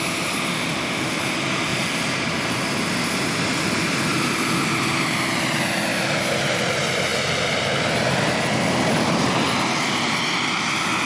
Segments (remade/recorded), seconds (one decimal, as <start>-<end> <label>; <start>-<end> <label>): 0.0-0.5 recorded; 0.5-1.2 remade; 1.2-11.1 recorded

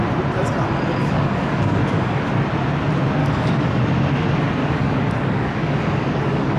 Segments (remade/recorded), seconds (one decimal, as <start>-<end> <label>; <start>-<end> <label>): 0.0-1.0 recorded; 1.0-2.3 remade; 2.3-3.2 recorded; 3.2-3.8 remade; 3.8-4.6 recorded; 4.6-6.6 remade

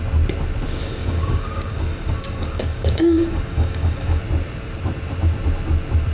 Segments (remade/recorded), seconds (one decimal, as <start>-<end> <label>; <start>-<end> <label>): 0.0-0.8 recorded; 0.8-4.2 remade; 4.2-6.1 recorded

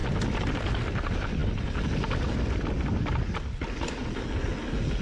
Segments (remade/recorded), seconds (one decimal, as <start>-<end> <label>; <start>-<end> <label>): 0.0-5.0 recorded

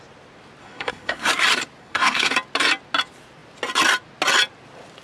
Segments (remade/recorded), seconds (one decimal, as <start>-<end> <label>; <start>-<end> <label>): 0.0-0.6 recorded; 0.6-1.3 remade; 1.3-1.8 recorded; 1.8-2.3 remade; 2.3-5.0 recorded